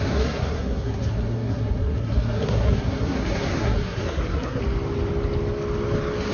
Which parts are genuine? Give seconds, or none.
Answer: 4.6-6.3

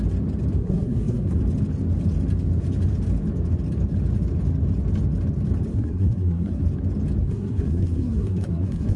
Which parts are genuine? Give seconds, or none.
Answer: 0.0-0.6; 1.4-5.7; 6.6-7.2

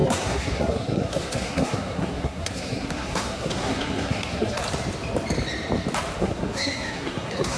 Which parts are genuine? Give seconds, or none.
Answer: 4.6-6.2